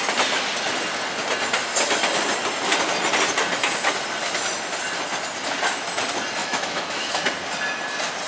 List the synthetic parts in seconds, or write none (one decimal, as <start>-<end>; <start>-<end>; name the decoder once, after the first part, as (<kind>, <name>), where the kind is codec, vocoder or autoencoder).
6.4-7.2 (autoencoder, DAC-VAE)